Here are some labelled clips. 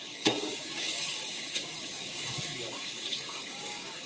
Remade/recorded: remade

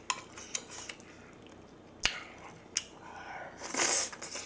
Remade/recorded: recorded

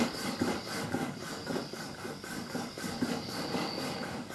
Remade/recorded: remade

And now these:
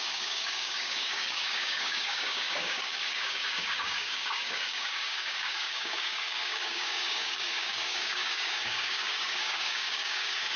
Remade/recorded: remade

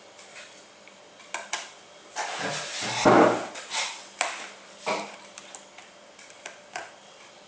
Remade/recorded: recorded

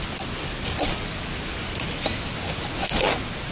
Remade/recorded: recorded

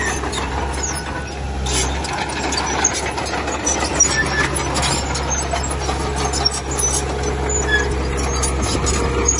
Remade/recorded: recorded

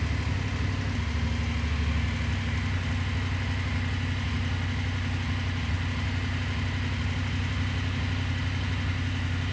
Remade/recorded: recorded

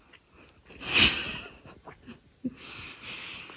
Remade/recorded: recorded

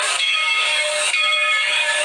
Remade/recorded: remade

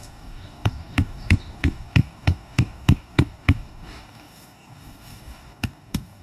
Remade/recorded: remade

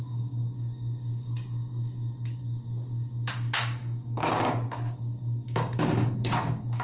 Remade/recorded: remade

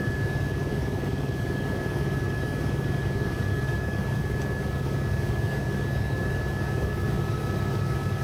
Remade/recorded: remade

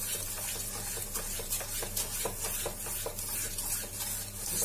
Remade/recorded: recorded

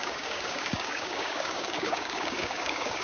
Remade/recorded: remade